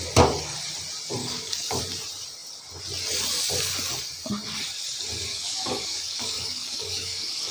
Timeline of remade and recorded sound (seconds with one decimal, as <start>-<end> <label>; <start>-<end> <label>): 0.0-1.2 recorded; 1.2-1.8 remade; 1.8-5.3 recorded; 5.3-7.5 remade